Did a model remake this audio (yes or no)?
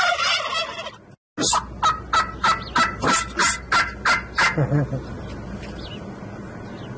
no